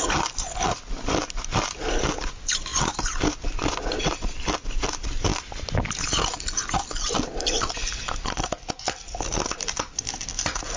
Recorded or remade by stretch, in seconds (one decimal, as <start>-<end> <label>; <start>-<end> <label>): 0.0-10.8 recorded

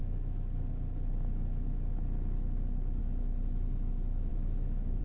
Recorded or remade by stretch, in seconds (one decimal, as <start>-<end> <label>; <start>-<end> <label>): 0.0-4.3 recorded; 4.3-5.0 remade

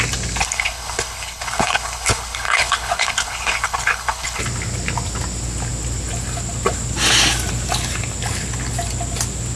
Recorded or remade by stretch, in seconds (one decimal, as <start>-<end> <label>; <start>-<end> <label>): 0.0-0.4 recorded; 0.4-4.4 remade; 4.4-9.6 recorded